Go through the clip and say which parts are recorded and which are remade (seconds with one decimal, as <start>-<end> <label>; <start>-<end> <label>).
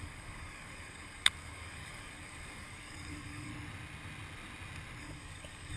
0.0-3.5 remade; 3.5-5.0 recorded; 5.0-5.8 remade